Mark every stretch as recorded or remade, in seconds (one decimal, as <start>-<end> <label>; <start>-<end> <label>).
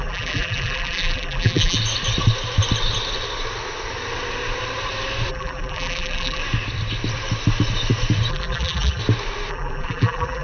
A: 0.0-1.8 remade; 1.8-5.3 recorded; 5.3-6.4 remade; 6.4-8.3 recorded; 8.3-9.0 remade; 9.0-9.5 recorded; 9.5-10.4 remade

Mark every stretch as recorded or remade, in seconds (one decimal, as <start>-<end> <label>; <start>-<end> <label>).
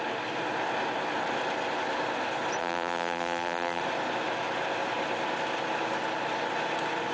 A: 0.0-2.6 recorded; 2.6-3.8 remade; 3.8-7.1 recorded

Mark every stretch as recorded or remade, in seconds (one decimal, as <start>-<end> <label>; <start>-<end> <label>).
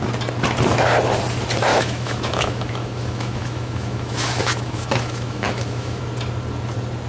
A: 0.0-1.7 recorded; 1.7-6.0 remade; 6.0-7.1 recorded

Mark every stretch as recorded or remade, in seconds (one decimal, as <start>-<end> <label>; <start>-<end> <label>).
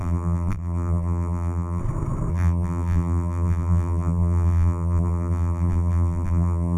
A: 0.0-1.8 remade; 1.8-2.3 recorded; 2.3-6.8 remade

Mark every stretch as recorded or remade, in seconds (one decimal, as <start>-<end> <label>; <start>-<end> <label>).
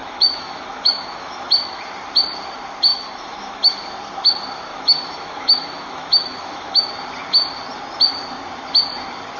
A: 0.0-1.8 remade; 1.8-2.9 recorded; 2.9-3.7 remade; 3.7-4.7 recorded; 4.7-6.8 remade; 6.8-9.4 recorded